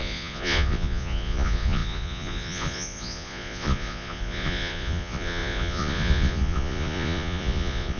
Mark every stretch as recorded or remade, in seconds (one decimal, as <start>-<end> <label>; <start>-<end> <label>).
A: 0.0-8.0 remade

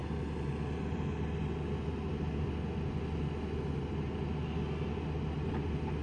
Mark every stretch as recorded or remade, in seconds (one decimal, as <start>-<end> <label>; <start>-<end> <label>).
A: 0.0-6.0 recorded